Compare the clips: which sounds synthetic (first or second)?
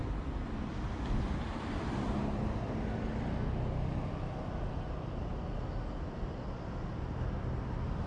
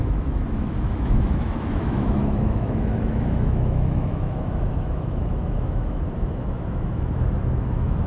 second